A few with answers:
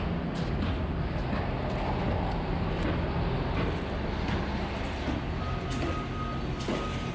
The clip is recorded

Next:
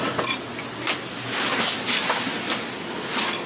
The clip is recorded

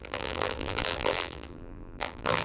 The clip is remade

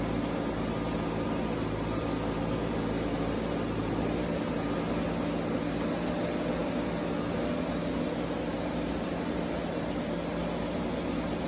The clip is recorded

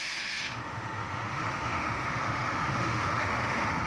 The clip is remade